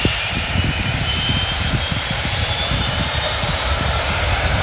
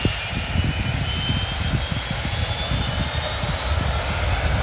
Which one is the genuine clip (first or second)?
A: second